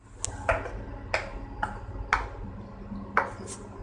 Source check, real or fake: real